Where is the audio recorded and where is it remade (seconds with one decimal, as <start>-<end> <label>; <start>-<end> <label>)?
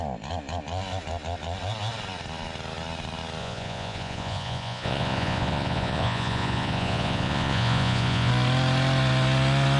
0.0-3.4 recorded; 3.4-8.3 remade; 8.3-9.8 recorded